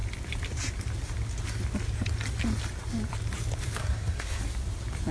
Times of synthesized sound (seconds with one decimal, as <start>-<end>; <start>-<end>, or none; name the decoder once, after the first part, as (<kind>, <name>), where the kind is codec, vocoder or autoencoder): 3.8-4.4 (codec, SNAC)